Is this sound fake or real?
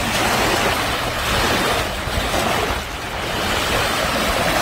fake